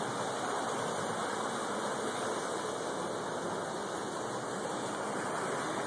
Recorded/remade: recorded